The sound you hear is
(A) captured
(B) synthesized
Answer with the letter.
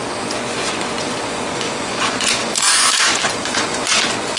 B